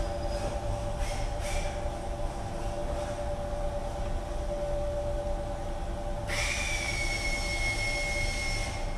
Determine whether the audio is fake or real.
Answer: real